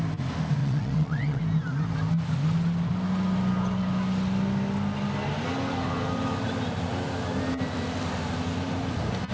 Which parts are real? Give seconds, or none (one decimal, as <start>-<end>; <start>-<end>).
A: 0.0-0.6; 1.4-9.3